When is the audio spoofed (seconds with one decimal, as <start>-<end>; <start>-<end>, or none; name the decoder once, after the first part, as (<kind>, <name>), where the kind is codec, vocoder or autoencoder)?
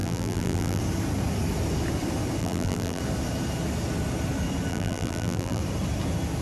0.0-0.8 (vocoder, BigVGAN v2); 2.4-3.0; 4.7-5.6